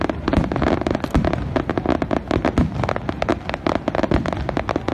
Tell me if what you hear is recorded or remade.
recorded